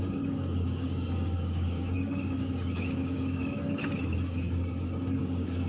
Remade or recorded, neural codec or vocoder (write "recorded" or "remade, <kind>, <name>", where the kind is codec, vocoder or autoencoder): remade, codec, DAC